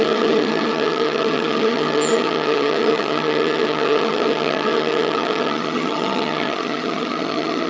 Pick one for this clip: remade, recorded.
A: remade